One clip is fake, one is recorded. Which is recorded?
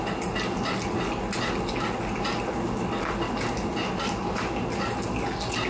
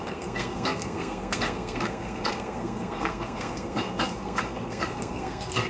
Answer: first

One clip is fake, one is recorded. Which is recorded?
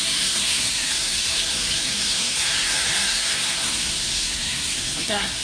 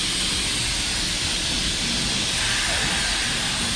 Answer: second